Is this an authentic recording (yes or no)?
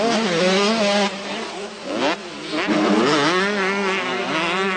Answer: yes